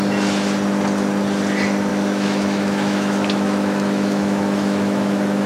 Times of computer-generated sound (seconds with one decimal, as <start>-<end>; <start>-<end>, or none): 1.9-5.5